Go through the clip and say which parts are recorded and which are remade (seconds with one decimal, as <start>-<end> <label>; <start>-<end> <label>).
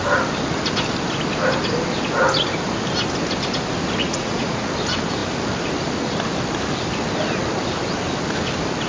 0.0-4.0 recorded; 4.0-4.7 remade; 4.7-8.9 recorded